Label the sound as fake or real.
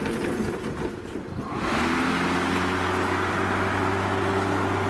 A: real